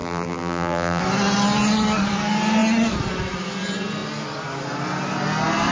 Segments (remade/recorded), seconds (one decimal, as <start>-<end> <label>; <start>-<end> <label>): 0.0-1.0 remade; 1.0-5.7 recorded